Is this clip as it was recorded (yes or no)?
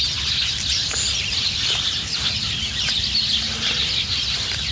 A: yes